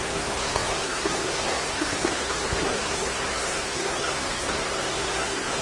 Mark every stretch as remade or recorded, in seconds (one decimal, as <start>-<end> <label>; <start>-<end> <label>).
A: 0.0-5.6 remade